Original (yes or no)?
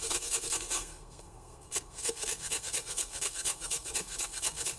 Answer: no